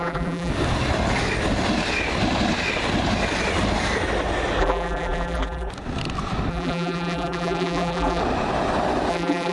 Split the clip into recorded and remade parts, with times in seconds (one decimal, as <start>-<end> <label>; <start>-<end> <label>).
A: 0.0-0.5 remade; 0.5-4.6 recorded; 4.6-5.7 remade; 5.7-6.5 recorded; 6.5-8.2 remade; 8.2-9.1 recorded; 9.1-9.5 remade

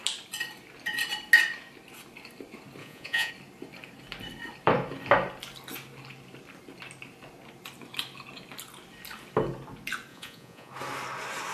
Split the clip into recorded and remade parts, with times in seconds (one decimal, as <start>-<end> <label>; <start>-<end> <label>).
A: 0.0-2.8 recorded; 2.8-3.3 remade; 3.3-10.1 recorded; 10.1-10.7 remade; 10.7-11.5 recorded

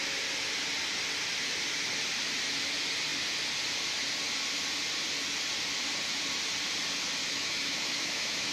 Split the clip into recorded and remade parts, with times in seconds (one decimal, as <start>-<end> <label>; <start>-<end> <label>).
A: 0.0-7.2 recorded; 7.2-8.5 remade

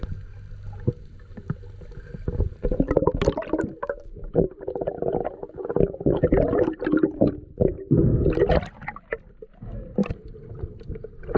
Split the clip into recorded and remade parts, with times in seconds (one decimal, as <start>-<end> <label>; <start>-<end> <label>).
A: 0.0-11.4 recorded

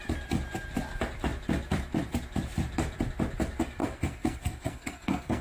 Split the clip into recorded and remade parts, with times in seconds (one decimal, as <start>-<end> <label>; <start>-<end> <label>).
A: 0.0-3.8 recorded; 3.8-5.4 remade

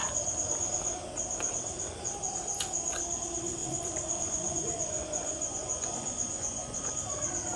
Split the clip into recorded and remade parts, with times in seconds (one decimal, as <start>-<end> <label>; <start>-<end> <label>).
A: 0.0-3.6 recorded; 3.6-6.8 remade; 6.8-7.6 recorded